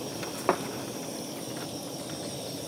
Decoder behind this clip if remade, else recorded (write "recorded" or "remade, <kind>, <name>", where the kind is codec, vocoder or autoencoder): recorded